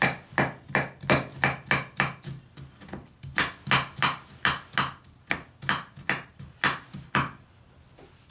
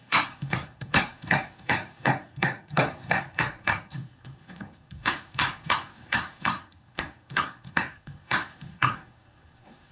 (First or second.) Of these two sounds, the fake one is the second